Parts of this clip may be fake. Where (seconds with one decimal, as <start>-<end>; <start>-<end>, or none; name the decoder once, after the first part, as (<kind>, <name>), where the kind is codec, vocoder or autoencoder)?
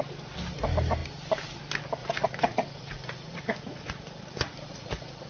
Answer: 2.0-5.3 (vocoder, Vocos)